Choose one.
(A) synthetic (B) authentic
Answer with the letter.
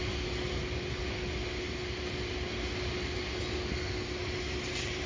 B